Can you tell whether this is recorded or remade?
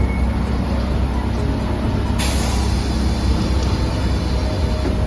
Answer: recorded